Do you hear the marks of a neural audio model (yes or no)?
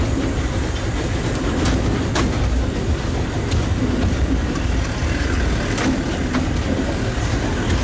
no